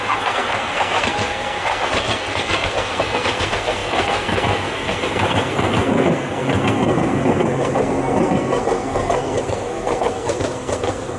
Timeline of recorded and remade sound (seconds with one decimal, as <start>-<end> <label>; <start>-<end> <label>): 0.0-11.2 remade